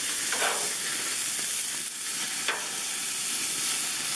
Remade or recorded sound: recorded